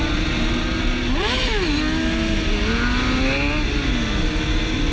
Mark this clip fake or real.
real